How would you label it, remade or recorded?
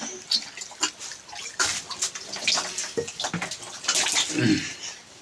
recorded